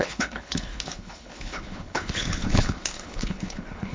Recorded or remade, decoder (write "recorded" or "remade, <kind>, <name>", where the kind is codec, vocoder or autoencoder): remade, codec, HILCodec